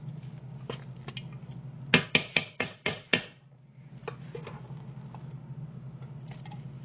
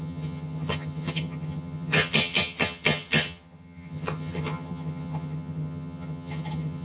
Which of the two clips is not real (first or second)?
second